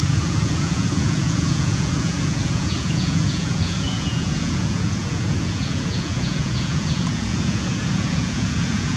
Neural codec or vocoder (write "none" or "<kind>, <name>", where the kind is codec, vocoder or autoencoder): vocoder, Vocos